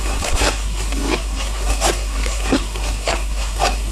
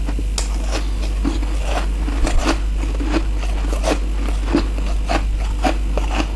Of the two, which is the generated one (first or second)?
first